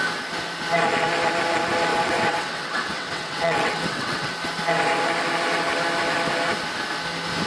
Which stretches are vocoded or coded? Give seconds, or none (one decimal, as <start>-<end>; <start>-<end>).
1.9-4.3